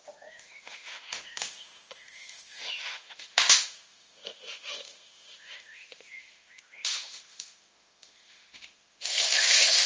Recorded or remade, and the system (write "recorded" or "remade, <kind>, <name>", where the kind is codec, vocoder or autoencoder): remade, autoencoder, DAC-VAE